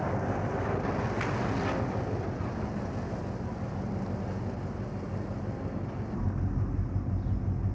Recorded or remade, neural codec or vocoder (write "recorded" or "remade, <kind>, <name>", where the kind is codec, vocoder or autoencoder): recorded